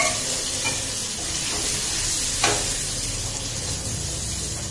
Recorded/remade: recorded